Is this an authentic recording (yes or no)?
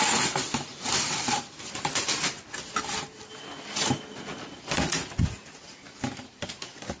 yes